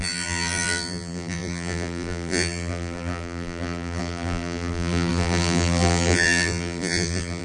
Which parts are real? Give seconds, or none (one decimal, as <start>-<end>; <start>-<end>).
none